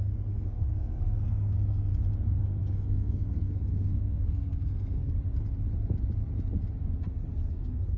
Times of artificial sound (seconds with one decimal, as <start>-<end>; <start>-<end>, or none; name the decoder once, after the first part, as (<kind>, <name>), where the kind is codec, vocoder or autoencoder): 0.0-1.9 (codec, SNAC); 2.4-5.0; 7.5-8.0